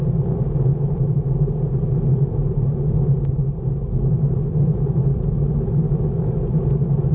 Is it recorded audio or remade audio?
recorded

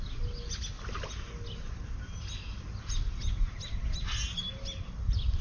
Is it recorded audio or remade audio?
recorded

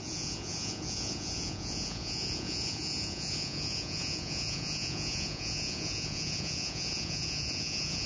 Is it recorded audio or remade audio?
remade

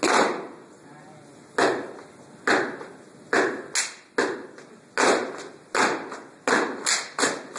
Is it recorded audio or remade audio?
recorded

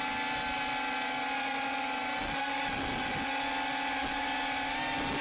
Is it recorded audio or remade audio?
recorded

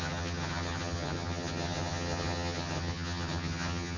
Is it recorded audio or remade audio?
remade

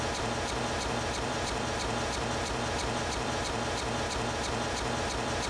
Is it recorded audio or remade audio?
remade